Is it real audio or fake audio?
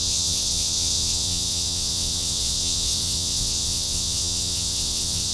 fake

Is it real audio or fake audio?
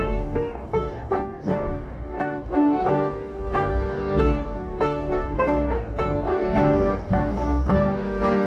fake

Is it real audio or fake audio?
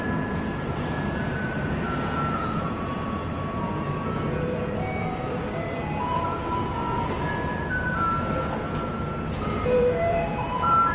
fake